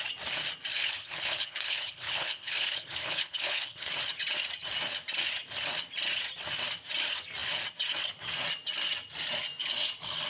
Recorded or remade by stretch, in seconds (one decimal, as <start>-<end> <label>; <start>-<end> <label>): 0.0-0.7 recorded; 0.7-3.9 remade; 3.9-10.3 recorded

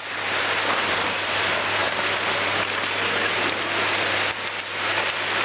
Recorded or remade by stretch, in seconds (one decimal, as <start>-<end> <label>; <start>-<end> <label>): 0.0-5.4 recorded

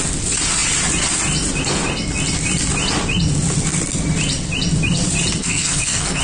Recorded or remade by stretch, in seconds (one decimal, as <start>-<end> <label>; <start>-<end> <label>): 0.0-5.4 recorded; 5.4-6.2 remade

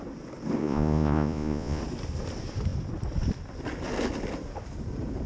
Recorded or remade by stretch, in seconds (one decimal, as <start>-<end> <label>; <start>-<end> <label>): 0.0-0.6 recorded; 0.6-1.8 remade; 1.8-5.3 recorded